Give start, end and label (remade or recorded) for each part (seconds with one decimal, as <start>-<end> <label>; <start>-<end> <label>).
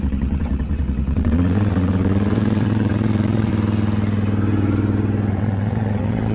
0.0-3.5 remade; 3.5-5.3 recorded; 5.3-6.3 remade